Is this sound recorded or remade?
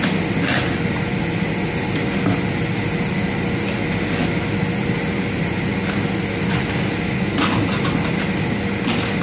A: recorded